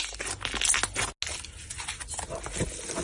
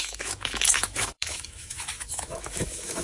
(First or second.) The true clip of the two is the first